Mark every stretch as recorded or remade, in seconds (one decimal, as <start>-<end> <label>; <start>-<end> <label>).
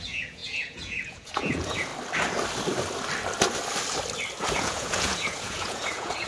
0.0-1.9 remade; 1.9-4.4 recorded; 4.4-6.3 remade